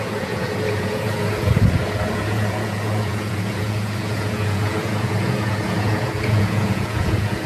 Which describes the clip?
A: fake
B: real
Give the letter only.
A